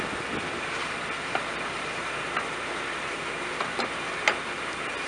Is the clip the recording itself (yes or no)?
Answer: yes